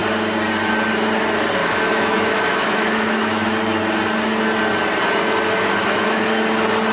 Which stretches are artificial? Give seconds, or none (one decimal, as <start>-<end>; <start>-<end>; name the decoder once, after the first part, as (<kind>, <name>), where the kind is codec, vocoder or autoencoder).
1.6-3.5 (autoencoder, DAC-VAE); 5.8-6.4